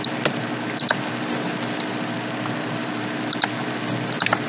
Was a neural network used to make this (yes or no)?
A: no